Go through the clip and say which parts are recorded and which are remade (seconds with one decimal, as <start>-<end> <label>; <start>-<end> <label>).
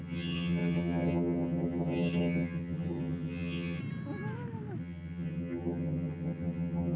0.0-3.8 remade; 3.8-4.8 recorded; 4.8-7.0 remade